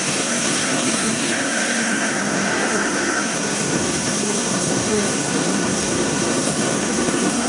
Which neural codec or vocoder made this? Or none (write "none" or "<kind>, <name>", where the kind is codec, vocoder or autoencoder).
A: codec, SNAC